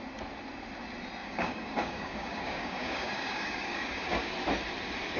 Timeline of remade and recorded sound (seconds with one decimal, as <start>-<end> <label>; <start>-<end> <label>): 0.0-1.2 recorded; 1.2-4.3 remade; 4.3-5.2 recorded